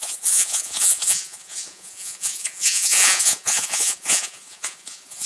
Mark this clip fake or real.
fake